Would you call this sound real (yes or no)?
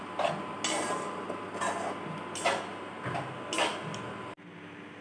yes